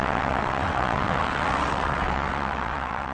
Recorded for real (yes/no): no